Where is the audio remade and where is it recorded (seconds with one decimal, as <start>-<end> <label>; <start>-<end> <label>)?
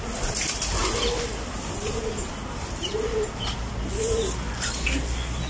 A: 0.0-5.5 recorded